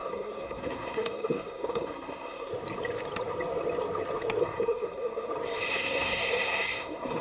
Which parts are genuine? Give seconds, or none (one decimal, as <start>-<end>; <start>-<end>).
2.5-4.4; 5.3-5.7